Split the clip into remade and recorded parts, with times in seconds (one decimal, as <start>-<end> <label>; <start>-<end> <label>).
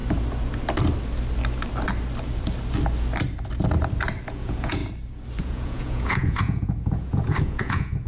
0.0-4.3 recorded; 4.3-4.8 remade; 4.8-5.4 recorded; 5.4-8.1 remade